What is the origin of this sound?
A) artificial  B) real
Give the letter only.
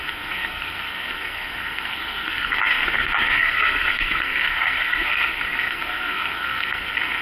A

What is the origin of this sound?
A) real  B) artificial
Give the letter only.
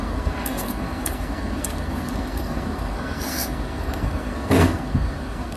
B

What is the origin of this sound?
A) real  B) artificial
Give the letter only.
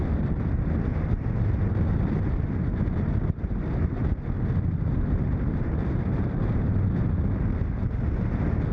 A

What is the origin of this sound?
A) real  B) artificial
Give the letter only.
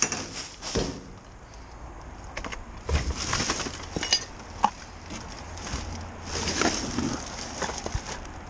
A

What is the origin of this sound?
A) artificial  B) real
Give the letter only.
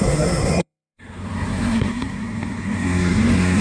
A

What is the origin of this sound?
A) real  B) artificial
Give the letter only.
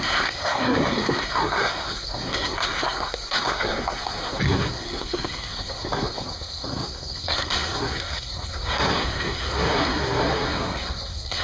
B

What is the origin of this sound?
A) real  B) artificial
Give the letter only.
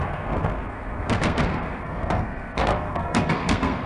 B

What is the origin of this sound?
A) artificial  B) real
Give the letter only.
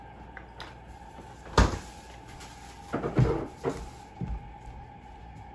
B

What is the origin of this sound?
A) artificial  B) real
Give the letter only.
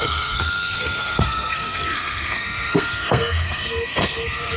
A